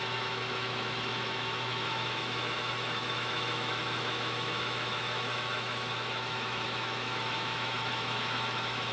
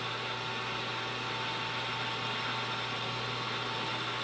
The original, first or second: second